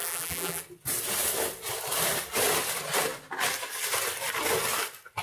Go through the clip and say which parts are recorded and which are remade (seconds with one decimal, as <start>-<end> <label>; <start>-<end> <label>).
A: 0.0-0.6 remade; 0.6-5.2 recorded